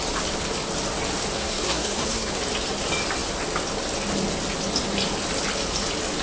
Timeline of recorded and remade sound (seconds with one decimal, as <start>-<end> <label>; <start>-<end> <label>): 0.0-1.4 recorded; 1.4-2.3 remade; 2.3-6.2 recorded